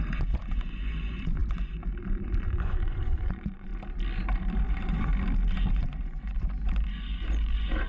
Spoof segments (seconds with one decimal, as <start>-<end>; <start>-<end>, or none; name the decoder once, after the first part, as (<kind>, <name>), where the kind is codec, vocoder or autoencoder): 0.0-3.7 (vocoder, Vocos); 4.5-5.1; 5.7-7.9